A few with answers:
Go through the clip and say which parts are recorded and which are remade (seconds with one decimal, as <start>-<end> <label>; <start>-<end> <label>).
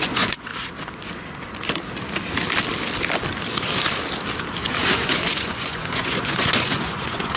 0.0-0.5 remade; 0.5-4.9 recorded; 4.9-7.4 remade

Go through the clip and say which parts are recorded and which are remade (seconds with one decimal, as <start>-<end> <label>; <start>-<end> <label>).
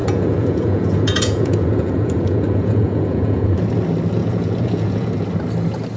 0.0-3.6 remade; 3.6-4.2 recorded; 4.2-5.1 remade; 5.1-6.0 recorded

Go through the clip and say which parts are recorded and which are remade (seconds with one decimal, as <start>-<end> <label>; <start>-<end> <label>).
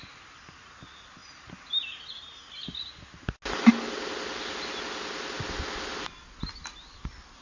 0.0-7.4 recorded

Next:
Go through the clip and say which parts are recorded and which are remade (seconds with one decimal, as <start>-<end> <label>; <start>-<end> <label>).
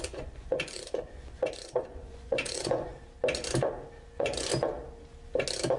0.0-2.9 remade; 2.9-4.0 recorded; 4.0-4.5 remade; 4.5-5.8 recorded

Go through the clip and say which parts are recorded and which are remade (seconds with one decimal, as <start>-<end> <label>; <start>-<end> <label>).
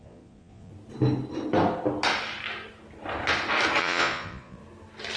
0.0-0.7 remade; 0.7-3.8 recorded; 3.8-4.6 remade; 4.6-5.2 recorded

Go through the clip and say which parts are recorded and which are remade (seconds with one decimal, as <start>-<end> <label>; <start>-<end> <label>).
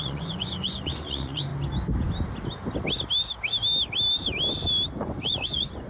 0.0-1.5 remade; 1.5-5.0 recorded; 5.0-5.9 remade